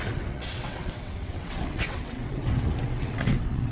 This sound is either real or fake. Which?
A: fake